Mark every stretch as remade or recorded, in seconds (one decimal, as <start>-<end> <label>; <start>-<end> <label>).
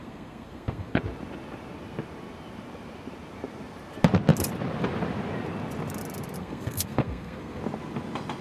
0.0-1.0 remade; 1.0-6.4 recorded; 6.4-7.6 remade; 7.6-8.4 recorded